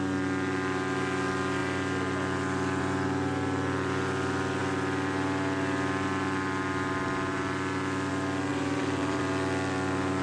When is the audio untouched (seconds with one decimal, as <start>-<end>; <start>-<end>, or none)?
0.0-8.5; 9.2-10.2